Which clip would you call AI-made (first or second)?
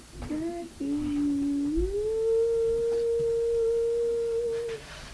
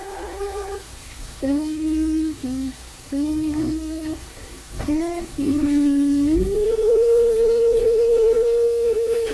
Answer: second